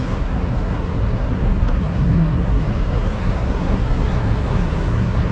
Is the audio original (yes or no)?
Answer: no